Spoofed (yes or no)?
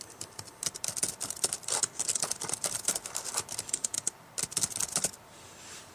no